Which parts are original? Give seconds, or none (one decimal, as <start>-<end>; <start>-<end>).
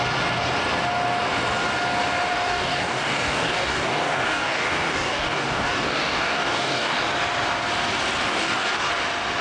0.0-2.3; 7.0-8.3; 8.9-9.4